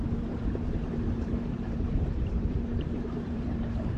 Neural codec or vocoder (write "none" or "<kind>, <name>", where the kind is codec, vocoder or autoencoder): vocoder, BigVGAN v2